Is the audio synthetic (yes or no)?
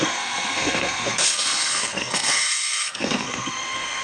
yes